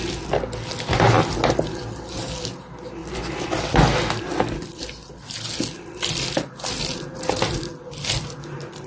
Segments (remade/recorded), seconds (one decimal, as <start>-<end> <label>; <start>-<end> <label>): 0.0-8.9 recorded